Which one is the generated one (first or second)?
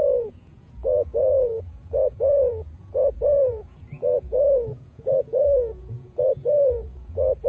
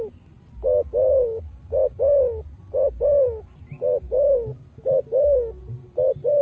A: first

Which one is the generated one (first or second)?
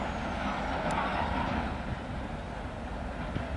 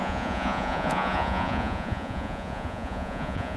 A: second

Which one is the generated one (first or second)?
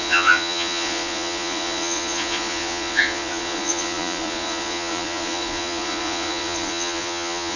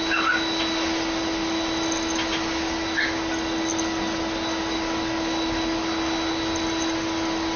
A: first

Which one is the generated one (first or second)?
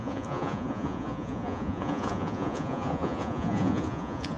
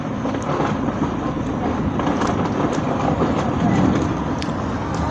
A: first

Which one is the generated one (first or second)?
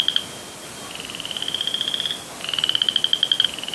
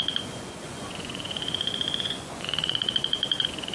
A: second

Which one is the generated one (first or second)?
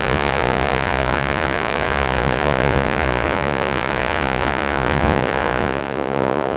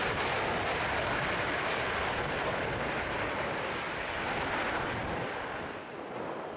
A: first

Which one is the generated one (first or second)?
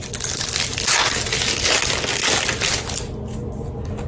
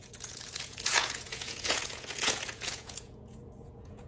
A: second